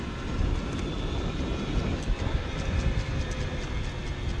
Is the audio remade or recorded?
recorded